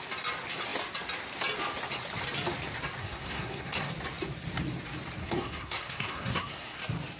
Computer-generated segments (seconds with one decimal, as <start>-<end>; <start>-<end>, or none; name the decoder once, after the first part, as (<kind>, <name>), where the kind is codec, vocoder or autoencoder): 3.0-3.9 (codec, SNAC); 5.2-6.8